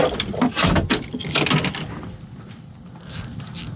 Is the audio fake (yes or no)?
no